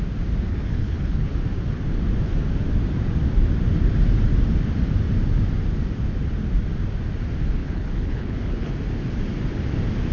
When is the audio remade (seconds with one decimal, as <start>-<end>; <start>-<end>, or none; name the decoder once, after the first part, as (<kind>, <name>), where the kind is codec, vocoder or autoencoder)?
0.5-1.3 (codec, HILCodec); 7.6-8.7